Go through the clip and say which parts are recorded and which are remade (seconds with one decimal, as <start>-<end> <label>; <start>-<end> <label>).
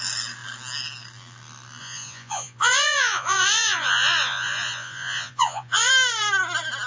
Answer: 0.0-1.8 recorded; 1.8-5.9 remade; 5.9-6.9 recorded